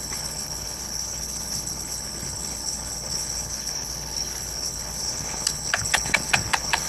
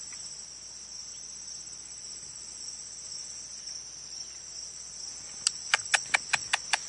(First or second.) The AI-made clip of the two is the first